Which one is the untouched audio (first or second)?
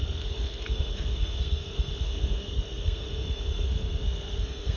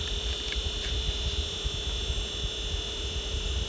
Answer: second